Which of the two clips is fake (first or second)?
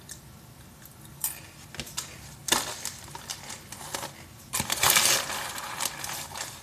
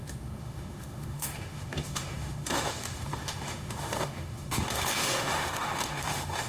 second